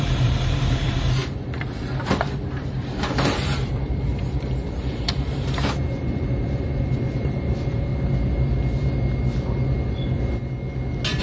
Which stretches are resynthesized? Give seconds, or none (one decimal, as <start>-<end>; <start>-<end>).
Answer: 0.0-7.9